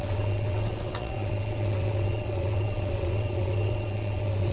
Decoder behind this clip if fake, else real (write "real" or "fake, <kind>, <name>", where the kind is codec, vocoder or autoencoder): fake, vocoder, WaveNeXt